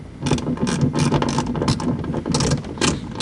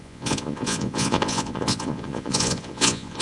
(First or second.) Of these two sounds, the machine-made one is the second